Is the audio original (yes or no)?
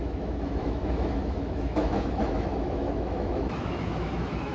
no